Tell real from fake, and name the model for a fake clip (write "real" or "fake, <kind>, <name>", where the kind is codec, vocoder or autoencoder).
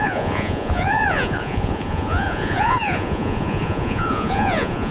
fake, vocoder, Vocos